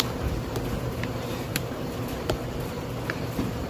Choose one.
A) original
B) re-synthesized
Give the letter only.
B